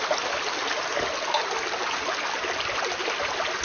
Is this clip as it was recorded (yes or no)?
yes